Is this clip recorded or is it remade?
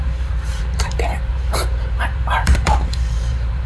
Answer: remade